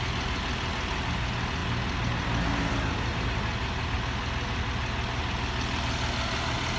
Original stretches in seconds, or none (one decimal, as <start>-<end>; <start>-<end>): 0.0-6.8